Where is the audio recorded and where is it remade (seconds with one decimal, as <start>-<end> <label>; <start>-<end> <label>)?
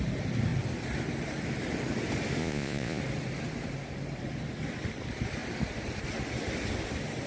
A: 0.0-2.4 recorded; 2.4-3.0 remade; 3.0-7.3 recorded